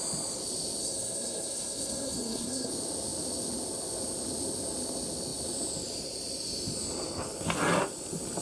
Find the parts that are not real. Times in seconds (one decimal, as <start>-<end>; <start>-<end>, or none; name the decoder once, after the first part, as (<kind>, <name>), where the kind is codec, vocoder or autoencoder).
0.8-2.7 (codec, SNAC)